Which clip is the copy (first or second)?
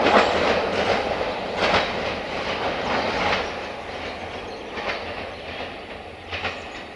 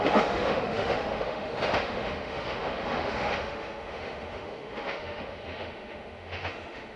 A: second